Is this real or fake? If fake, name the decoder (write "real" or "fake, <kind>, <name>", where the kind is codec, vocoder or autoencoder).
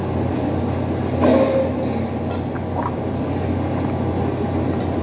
real